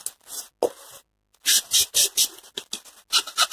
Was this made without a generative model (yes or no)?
yes